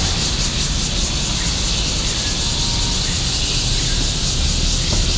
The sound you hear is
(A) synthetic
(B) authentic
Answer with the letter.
B